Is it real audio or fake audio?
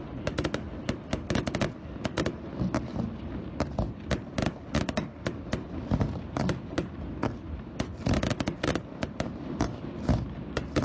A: real